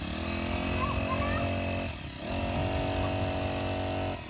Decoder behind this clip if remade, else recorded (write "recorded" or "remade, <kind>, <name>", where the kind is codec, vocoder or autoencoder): recorded